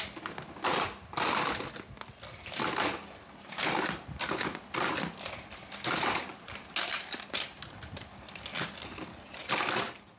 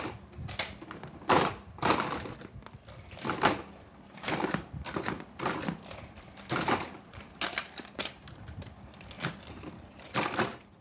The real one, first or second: first